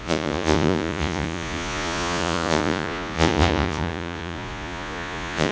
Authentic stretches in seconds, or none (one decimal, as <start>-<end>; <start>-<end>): none